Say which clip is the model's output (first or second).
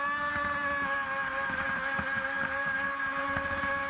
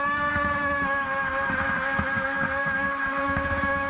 second